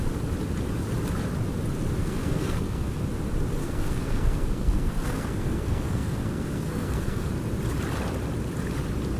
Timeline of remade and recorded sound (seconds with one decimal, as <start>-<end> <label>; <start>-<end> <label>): 0.0-2.0 recorded; 2.0-3.0 remade; 3.0-3.6 recorded; 3.6-7.3 remade; 7.3-9.2 recorded